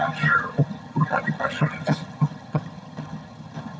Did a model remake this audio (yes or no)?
yes